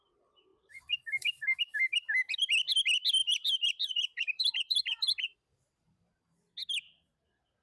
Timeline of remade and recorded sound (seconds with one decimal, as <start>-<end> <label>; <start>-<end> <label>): 0.0-0.5 recorded; 0.5-1.6 remade; 1.6-3.2 recorded; 3.2-5.5 remade; 5.5-7.6 recorded